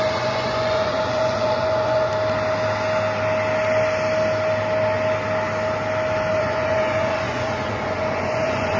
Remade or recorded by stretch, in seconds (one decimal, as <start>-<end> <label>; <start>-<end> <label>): 0.0-2.1 remade; 2.1-6.4 recorded; 6.4-8.8 remade